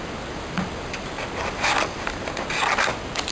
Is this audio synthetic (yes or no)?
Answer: no